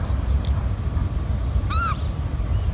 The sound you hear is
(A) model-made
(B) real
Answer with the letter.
B